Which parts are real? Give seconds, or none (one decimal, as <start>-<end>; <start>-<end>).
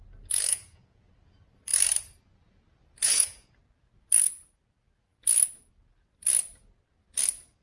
0.0-0.5; 1.1-3.0; 3.5-7.6